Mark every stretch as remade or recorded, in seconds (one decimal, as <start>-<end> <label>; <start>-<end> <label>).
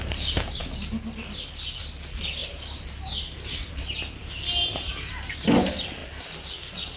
0.0-7.0 recorded